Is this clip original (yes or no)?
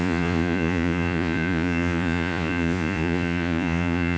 no